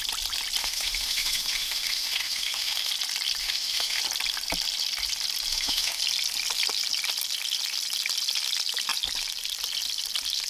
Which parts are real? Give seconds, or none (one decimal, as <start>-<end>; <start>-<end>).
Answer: 0.0-0.6; 2.9-3.4; 4.0-5.5; 6.0-10.5